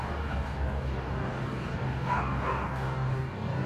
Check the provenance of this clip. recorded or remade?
remade